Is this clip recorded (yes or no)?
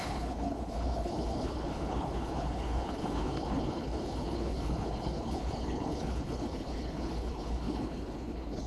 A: no